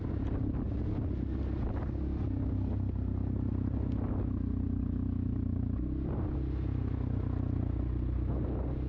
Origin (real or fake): real